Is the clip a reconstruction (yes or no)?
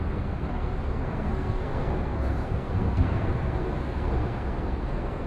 yes